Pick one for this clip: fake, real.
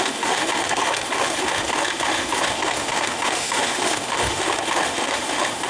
fake